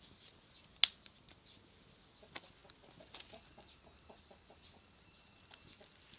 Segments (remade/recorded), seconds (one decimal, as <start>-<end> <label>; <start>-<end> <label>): 0.0-6.2 recorded